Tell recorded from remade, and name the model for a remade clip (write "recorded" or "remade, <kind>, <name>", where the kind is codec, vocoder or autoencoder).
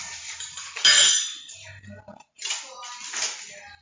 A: recorded